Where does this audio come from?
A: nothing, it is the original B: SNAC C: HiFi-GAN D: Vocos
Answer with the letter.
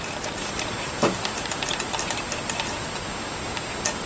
A